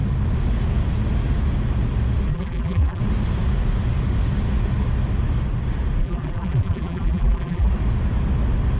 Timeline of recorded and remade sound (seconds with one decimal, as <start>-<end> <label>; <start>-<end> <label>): 0.0-2.3 recorded; 2.3-3.0 remade; 3.0-6.0 recorded; 6.0-7.7 remade; 7.7-8.8 recorded